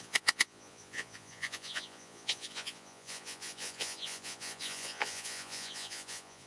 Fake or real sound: fake